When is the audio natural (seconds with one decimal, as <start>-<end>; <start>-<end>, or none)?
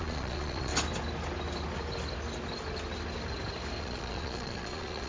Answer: 0.7-3.8